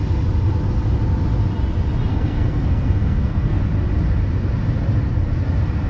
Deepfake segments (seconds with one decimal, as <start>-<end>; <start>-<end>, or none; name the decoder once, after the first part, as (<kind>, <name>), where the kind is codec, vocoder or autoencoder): 2.1-3.6 (codec, SNAC)